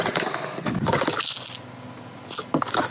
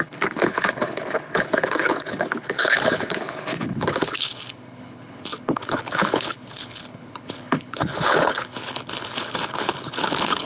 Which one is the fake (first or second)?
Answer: second